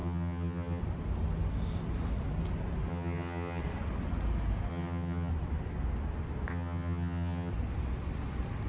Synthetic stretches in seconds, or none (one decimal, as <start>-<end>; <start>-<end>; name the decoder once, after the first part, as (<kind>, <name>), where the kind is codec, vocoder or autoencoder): 0.0-0.8 (vocoder, HiFi-GAN); 2.9-3.6; 4.7-5.3; 6.5-7.5